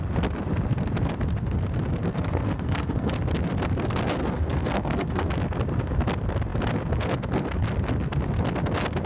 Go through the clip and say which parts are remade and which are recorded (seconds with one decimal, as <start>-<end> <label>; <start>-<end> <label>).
0.0-2.0 recorded; 2.0-3.1 remade; 3.1-4.2 recorded; 4.2-5.3 remade; 5.3-9.1 recorded